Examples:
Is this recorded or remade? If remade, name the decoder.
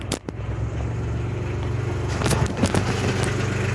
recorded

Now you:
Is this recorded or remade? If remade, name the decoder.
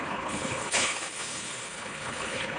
remade, codec, HILCodec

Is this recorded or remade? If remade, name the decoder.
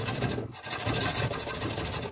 recorded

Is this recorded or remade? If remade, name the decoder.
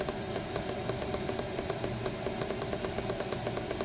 recorded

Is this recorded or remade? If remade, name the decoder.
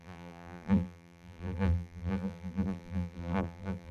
remade, vocoder, BigVGAN v2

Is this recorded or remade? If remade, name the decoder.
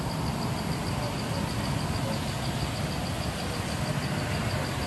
recorded